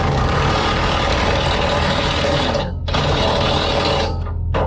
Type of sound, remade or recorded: remade